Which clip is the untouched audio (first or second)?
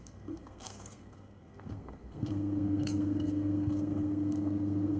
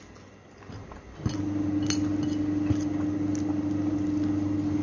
second